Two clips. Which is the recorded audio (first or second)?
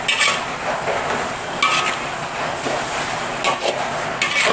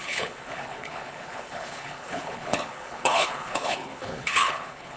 first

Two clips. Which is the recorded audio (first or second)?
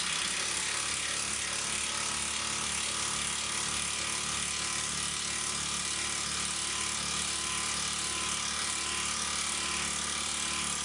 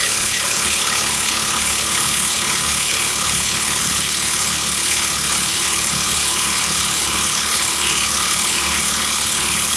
first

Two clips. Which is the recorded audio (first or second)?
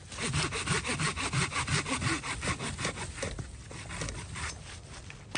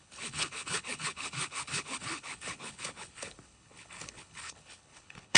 first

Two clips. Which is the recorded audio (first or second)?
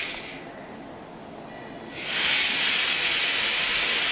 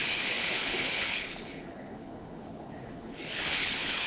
first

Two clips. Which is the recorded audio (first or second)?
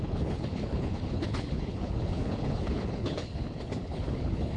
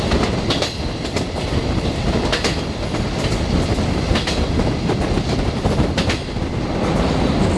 second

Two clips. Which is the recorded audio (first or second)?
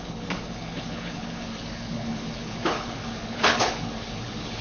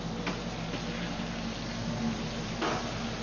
second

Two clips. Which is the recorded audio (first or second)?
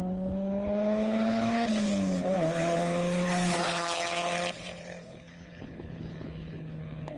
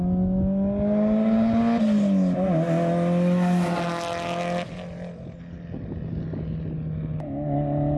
second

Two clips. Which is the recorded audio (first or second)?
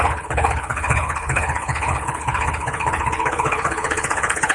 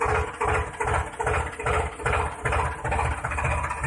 second